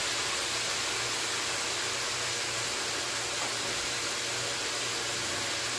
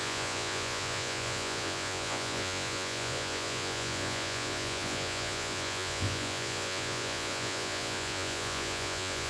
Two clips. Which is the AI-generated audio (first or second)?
second